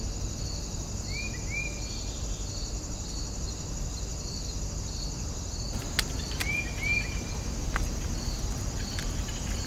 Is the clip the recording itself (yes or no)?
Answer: yes